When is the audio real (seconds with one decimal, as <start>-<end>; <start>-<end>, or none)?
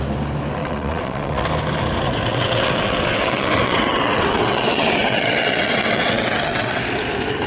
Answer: 0.0-0.6; 1.5-2.3; 6.8-7.5